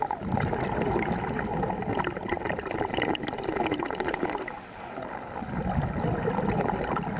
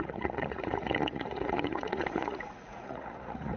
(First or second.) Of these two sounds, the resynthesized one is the second